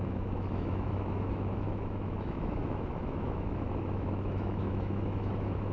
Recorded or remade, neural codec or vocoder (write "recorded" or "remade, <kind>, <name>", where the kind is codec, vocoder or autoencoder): remade, autoencoder, DAC-VAE